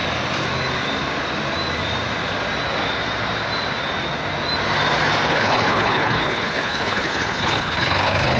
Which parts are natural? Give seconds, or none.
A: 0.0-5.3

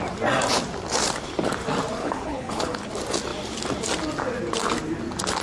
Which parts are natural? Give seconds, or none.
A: 0.0-2.0; 2.9-5.4

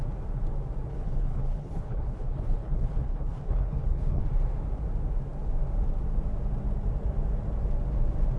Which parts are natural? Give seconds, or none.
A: 0.0-0.9; 4.2-8.4

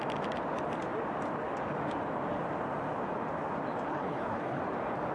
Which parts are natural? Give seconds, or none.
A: 0.0-3.9; 4.6-5.1

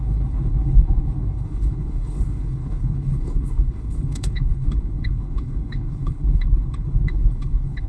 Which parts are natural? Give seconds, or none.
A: none

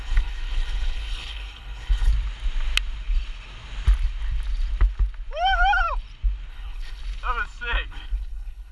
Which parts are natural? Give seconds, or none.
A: 2.1-6.5; 7.0-7.9